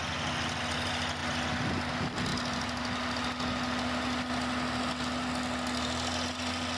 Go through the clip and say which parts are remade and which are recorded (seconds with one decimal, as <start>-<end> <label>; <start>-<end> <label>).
0.0-6.8 recorded